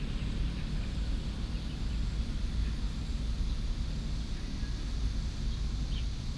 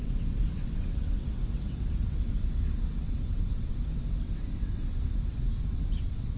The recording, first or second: first